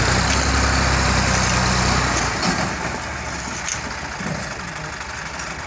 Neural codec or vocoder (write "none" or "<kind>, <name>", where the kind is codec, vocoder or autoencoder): none